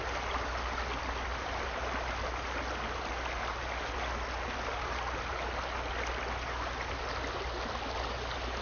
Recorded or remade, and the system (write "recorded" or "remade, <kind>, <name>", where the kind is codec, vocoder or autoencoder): recorded